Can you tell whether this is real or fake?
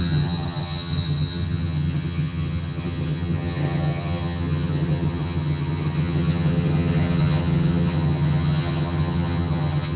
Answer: fake